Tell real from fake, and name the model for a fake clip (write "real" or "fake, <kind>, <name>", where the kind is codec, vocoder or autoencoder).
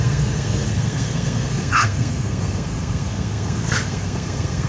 fake, codec, SNAC